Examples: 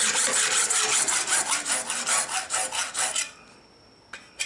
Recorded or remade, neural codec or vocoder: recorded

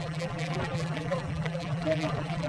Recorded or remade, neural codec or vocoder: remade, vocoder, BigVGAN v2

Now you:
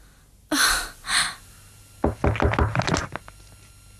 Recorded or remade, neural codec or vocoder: recorded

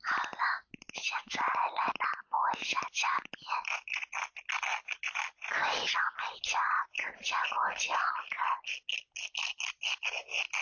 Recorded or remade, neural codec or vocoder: recorded